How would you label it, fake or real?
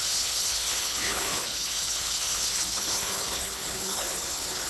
fake